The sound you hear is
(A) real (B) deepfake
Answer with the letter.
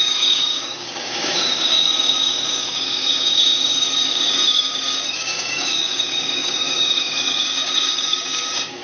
B